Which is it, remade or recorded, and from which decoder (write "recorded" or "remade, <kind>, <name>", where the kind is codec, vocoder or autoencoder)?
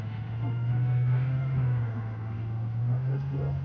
remade, autoencoder, DAC-VAE